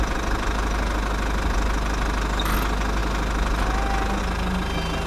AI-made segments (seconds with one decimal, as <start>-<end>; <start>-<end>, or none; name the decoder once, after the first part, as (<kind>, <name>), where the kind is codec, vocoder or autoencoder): none